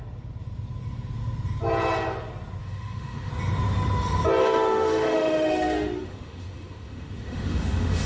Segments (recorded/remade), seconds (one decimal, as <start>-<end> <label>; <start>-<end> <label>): 0.0-2.6 recorded; 2.6-3.3 remade; 3.3-4.4 recorded; 4.4-8.1 remade